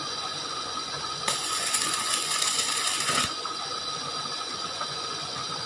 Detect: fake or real fake